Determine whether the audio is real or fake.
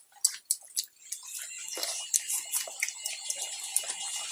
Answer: real